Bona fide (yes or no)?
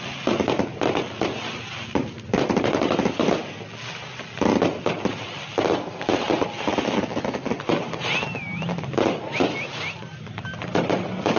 yes